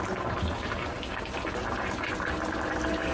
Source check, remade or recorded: recorded